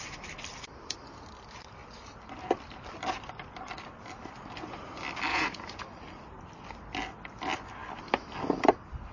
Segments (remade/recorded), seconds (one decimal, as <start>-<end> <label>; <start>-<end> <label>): 0.0-5.3 recorded; 5.3-5.8 remade; 5.8-9.1 recorded